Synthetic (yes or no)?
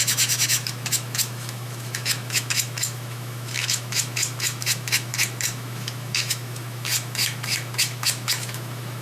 yes